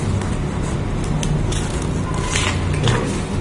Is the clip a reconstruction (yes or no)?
no